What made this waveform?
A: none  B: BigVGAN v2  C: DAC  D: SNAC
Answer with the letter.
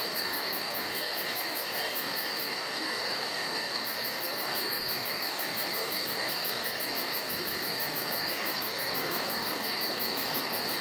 C